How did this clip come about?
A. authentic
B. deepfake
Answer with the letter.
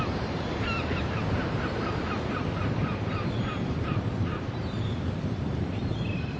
B